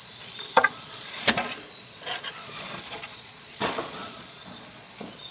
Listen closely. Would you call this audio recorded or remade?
remade